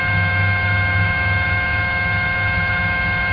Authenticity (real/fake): fake